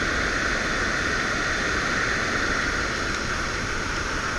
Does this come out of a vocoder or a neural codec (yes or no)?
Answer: no